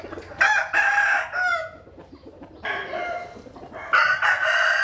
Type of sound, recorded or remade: recorded